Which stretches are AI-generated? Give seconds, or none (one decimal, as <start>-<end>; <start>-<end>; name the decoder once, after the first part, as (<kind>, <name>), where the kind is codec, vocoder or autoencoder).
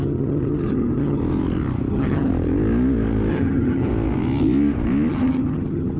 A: 0.0-1.2 (vocoder, HiFi-GAN); 1.9-2.3; 3.3-3.9; 5.1-6.0